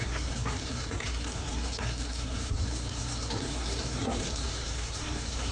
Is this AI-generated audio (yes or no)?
yes